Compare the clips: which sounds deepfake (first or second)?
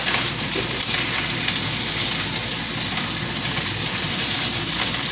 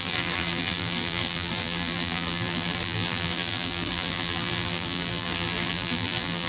second